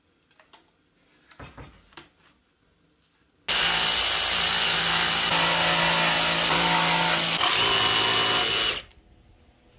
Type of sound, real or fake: real